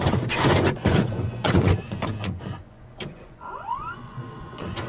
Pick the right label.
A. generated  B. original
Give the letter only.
A